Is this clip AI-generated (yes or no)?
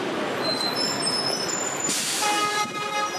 no